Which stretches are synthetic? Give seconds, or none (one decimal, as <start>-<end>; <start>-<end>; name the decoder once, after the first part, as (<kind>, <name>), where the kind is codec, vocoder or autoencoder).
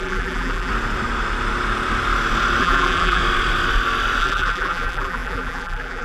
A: 0.0-0.7 (vocoder, BigVGAN v2); 2.6-3.2; 4.2-6.0